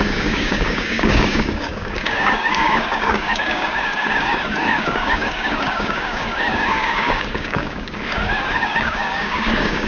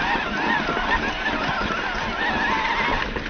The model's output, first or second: first